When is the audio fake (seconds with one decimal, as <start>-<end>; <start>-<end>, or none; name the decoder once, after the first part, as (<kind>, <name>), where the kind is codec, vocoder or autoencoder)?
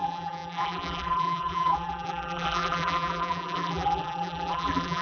0.0-5.0 (vocoder, BigVGAN v2)